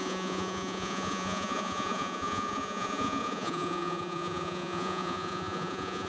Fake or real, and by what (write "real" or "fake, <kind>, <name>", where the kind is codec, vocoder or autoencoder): fake, vocoder, Vocos